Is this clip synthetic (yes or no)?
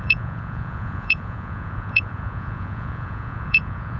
yes